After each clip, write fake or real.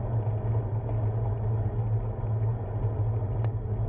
real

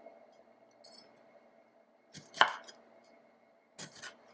real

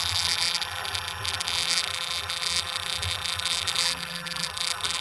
fake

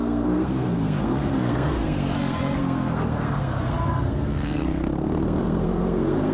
fake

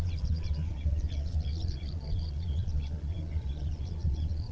fake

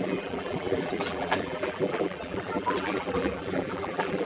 fake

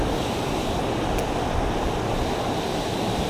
real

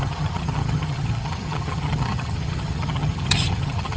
fake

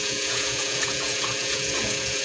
fake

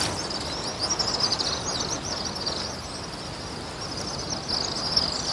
real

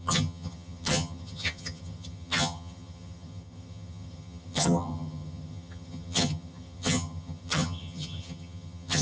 fake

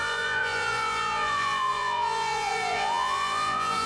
fake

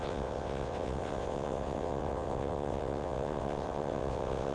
fake